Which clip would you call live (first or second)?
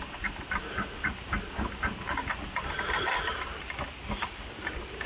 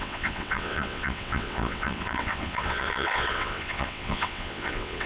first